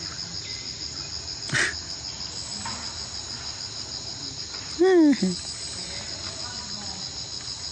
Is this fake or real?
real